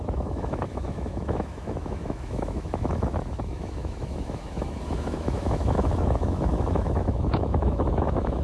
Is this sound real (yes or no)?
no